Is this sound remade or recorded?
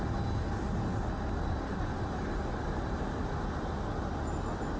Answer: recorded